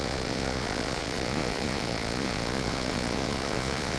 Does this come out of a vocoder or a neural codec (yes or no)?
yes